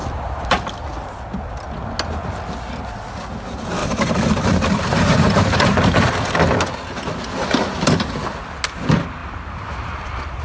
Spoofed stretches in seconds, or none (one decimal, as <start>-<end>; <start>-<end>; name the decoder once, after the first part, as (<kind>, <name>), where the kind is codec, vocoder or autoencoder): 0.0-0.5 (vocoder, BigVGAN v2); 3.8-6.1; 9.2-10.4